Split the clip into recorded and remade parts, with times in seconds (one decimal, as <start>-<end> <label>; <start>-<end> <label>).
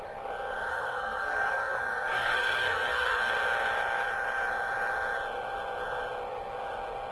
0.0-0.7 recorded; 0.7-3.3 remade; 3.3-7.1 recorded